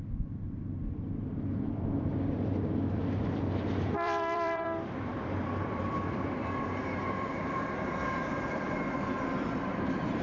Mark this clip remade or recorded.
remade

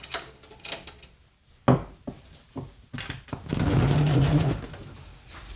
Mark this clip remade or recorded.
recorded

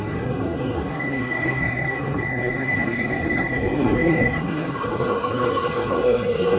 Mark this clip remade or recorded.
remade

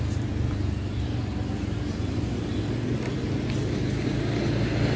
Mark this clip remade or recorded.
recorded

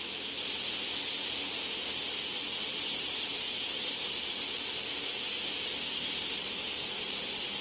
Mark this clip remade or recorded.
recorded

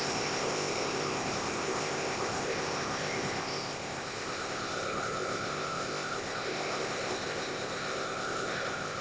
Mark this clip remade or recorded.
remade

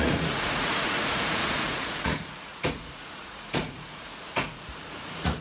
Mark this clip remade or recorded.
remade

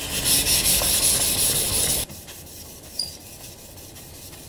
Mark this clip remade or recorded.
recorded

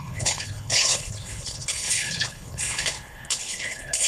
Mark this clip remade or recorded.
remade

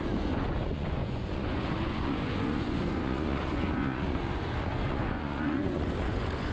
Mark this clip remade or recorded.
remade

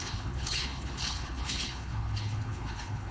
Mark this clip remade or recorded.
remade